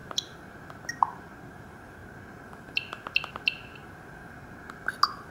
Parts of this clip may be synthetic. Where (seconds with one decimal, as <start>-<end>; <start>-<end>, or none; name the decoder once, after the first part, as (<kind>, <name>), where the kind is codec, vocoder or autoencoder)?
none